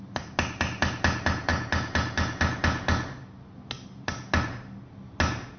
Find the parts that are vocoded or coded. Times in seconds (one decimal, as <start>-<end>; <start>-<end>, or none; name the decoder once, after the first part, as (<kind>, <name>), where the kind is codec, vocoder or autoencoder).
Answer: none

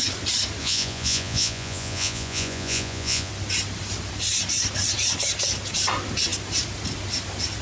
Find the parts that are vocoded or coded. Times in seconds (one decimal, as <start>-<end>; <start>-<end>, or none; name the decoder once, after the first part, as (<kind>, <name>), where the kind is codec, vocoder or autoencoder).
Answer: 0.6-3.3 (vocoder, Vocos)

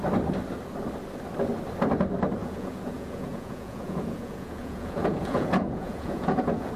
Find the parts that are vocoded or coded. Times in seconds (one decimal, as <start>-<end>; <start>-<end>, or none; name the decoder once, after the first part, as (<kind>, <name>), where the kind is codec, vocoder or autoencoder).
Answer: 2.4-6.8 (vocoder, Vocos)

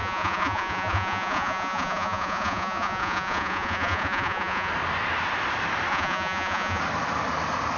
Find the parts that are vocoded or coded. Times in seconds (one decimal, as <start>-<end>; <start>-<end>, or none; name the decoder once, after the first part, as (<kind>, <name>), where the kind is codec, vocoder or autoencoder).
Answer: 0.0-4.7 (vocoder, Vocos); 5.9-6.8

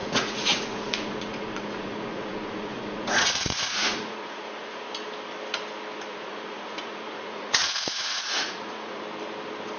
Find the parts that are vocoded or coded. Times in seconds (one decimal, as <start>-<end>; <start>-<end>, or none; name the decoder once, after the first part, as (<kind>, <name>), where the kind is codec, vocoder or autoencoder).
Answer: 0.0-4.9 (vocoder, Vocos); 6.1-9.0